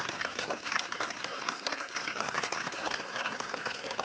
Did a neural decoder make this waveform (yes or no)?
yes